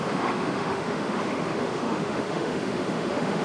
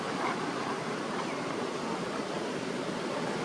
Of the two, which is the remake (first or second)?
first